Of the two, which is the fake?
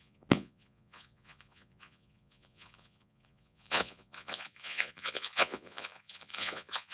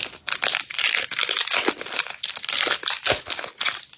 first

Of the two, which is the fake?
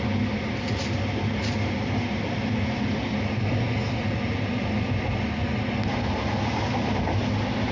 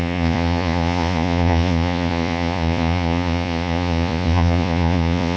second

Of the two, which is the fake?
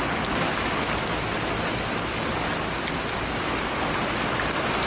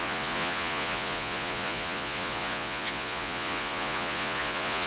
second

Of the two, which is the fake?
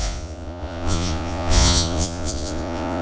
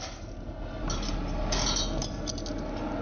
first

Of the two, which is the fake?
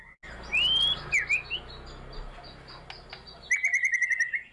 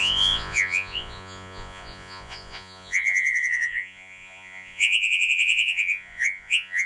second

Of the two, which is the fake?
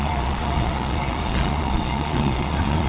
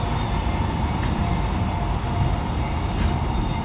first